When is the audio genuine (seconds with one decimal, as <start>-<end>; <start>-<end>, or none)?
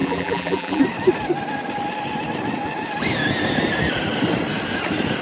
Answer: 0.8-5.2